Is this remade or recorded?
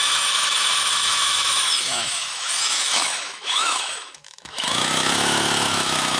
remade